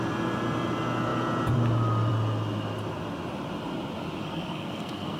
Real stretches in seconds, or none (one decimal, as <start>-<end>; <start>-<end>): 0.0-4.2